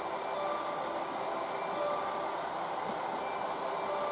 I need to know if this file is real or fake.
real